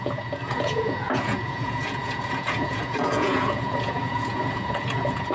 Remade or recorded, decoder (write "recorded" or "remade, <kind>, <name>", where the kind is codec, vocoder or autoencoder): remade, vocoder, Vocos